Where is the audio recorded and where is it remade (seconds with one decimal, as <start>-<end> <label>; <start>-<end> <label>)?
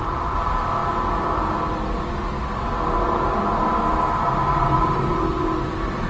0.0-0.8 remade; 0.8-4.5 recorded; 4.5-6.1 remade